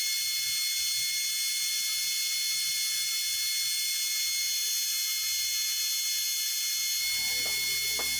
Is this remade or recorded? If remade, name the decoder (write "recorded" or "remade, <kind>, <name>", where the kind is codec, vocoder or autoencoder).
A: recorded